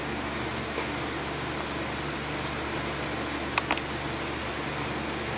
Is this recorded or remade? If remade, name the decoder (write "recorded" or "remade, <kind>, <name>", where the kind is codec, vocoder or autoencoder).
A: recorded